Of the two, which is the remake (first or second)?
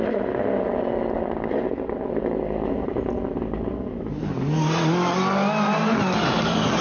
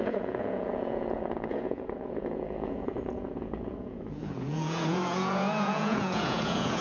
second